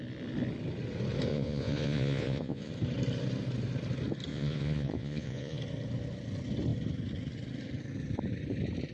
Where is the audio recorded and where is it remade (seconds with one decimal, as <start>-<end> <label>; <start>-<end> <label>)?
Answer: 0.0-1.3 recorded; 1.3-2.7 remade; 2.7-4.3 recorded; 4.3-5.6 remade; 5.6-8.9 recorded